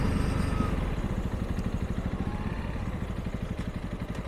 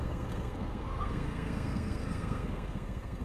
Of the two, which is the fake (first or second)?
second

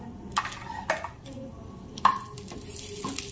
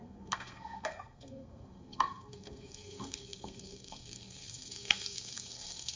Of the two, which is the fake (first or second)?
second